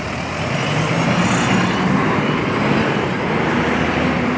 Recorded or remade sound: recorded